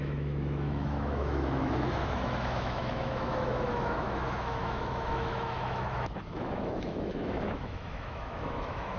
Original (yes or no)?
no